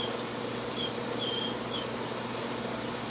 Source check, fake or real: real